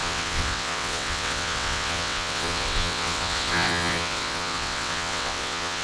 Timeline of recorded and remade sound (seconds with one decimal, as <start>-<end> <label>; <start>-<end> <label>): 0.0-5.8 remade